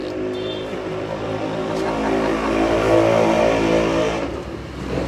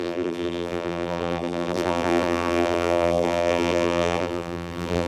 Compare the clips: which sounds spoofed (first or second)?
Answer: second